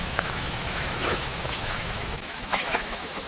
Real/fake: fake